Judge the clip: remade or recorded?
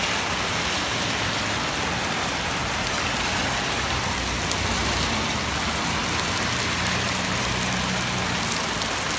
recorded